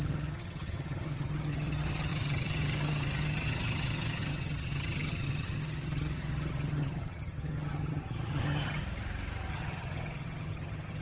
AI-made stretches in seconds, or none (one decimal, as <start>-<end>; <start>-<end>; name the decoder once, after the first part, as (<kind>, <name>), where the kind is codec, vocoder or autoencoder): 0.0-8.8 (vocoder, HiFi-GAN); 9.5-11.0